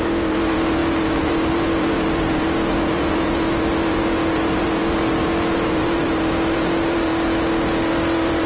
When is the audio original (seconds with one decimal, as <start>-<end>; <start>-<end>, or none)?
7.1-7.9